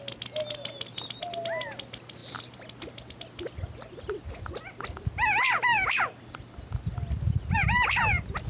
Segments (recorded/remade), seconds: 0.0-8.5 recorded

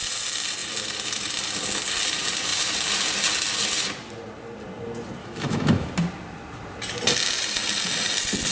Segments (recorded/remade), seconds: 0.0-5.2 recorded; 5.2-5.9 remade; 5.9-8.5 recorded

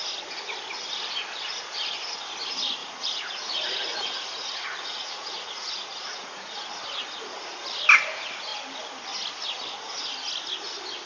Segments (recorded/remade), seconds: 0.0-2.8 recorded; 2.8-6.7 remade; 6.7-11.1 recorded

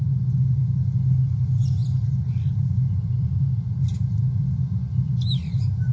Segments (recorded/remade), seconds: 0.0-5.9 recorded